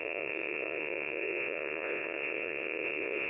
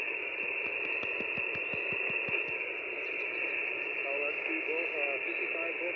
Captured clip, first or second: second